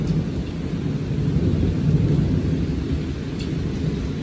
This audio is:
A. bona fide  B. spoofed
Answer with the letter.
A